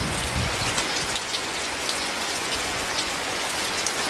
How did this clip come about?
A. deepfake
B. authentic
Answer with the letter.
A